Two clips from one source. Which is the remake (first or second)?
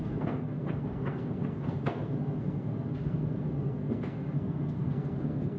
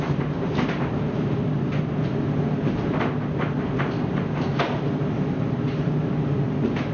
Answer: first